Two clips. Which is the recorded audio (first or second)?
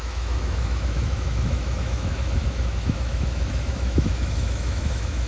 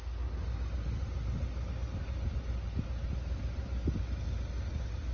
second